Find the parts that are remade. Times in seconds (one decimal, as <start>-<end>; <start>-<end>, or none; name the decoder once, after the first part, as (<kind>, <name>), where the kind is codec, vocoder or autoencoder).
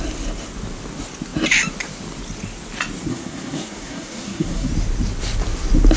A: 3.1-4.7 (codec, SNAC)